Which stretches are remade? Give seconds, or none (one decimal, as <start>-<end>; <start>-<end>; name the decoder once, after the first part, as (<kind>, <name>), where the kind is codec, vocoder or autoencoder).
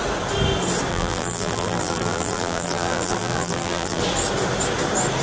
0.9-4.0 (vocoder, BigVGAN v2)